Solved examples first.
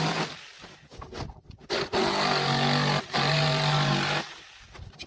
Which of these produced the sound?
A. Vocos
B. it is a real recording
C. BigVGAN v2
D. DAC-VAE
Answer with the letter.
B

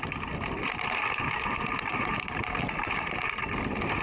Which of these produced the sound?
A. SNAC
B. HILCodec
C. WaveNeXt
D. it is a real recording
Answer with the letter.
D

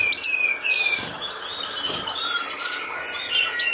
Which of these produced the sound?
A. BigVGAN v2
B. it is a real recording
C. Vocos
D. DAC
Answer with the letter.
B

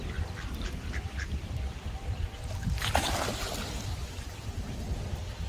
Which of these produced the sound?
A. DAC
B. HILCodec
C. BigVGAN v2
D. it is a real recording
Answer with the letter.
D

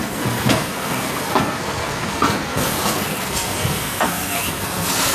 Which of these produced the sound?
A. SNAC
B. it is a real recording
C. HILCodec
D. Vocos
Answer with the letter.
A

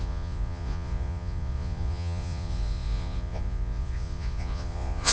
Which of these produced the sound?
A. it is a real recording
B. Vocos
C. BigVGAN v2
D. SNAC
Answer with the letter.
B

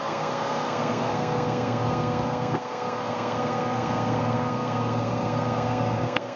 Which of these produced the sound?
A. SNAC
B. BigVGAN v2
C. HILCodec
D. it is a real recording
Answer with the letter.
A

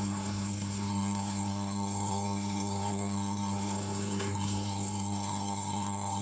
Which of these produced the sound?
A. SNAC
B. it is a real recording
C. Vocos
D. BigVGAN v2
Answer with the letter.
A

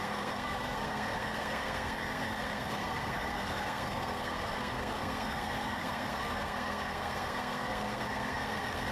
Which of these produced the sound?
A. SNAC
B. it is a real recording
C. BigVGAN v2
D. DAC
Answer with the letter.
A